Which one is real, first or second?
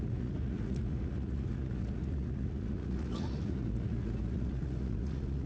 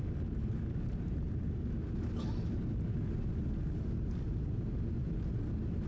second